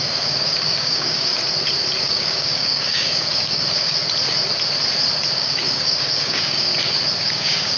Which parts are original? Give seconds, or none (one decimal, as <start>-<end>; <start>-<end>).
1.4-2.0; 4.0-5.3; 6.7-7.2